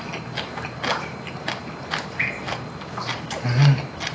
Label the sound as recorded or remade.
recorded